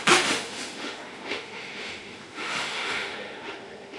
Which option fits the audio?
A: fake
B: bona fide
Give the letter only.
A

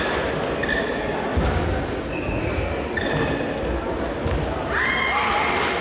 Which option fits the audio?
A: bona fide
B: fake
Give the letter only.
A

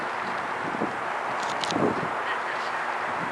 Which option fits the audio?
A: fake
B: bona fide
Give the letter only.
B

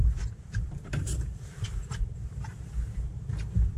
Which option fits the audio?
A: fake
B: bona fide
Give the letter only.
A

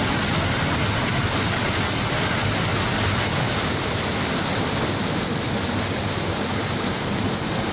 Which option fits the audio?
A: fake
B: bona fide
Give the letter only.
B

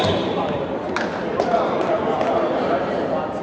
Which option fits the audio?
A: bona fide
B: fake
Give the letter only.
A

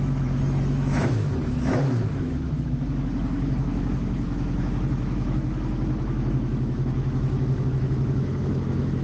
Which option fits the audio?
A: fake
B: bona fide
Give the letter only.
A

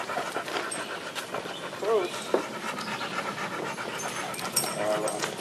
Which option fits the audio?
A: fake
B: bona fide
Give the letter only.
B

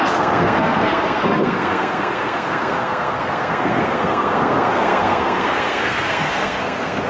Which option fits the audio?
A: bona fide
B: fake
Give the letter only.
B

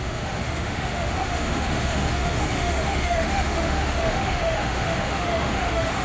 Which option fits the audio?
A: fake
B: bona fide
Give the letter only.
A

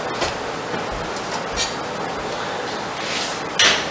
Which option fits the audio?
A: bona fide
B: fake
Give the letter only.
A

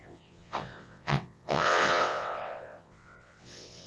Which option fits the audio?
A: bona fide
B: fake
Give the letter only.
B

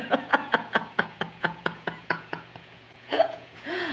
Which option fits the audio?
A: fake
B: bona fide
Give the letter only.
A